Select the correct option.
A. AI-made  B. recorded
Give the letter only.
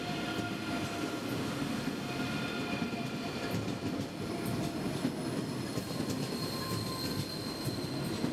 B